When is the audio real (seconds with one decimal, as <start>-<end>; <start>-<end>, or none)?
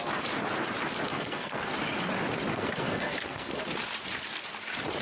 0.0-1.1; 1.7-2.5; 3.6-5.0